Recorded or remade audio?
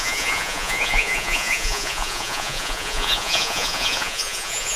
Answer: remade